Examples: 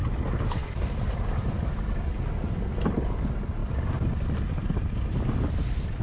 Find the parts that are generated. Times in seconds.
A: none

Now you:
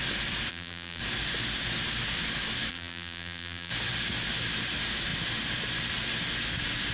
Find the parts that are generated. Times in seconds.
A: 0.5-1.0 (vocoder, BigVGAN v2); 2.7-3.7

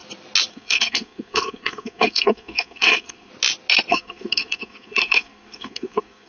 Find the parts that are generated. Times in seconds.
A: 0.5-3.3 (codec, SNAC); 3.9-6.3

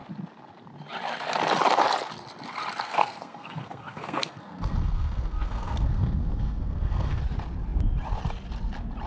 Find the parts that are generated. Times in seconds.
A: 2.8-7.2 (codec, SNAC)

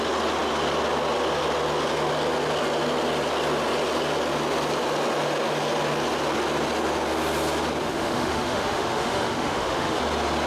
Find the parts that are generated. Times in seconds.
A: 7.8-10.0 (autoencoder, DAC-VAE)

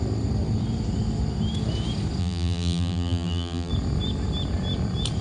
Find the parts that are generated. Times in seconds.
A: 2.2-3.7 (vocoder, BigVGAN v2)

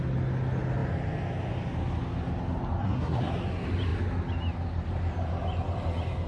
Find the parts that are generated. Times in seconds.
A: 2.8-3.3 (codec, SNAC)

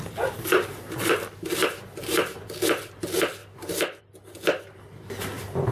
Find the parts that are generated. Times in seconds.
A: 3.4-4.0 (vocoder, BigVGAN v2)